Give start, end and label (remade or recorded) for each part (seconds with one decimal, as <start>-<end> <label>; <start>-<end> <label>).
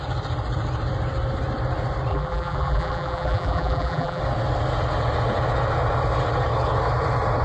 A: 0.0-2.1 recorded; 2.1-4.2 remade; 4.2-7.4 recorded